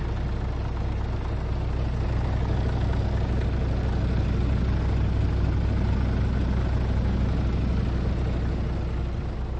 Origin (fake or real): real